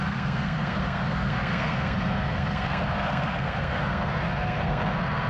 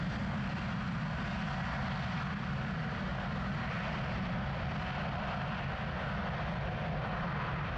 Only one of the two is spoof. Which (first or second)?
first